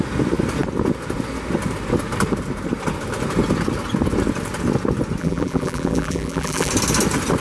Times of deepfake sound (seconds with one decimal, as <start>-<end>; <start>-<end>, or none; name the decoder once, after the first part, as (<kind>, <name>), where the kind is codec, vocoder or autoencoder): 5.2-6.7 (vocoder, BigVGAN v2)